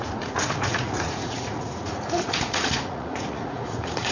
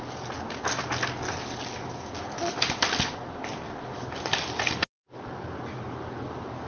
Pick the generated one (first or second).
first